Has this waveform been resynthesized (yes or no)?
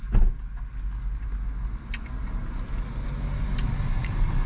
no